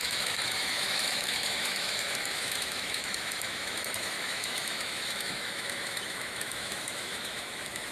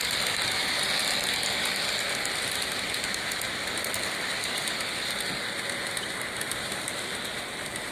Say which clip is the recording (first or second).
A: second